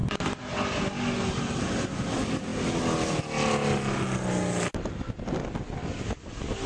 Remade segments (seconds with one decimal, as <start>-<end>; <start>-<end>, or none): none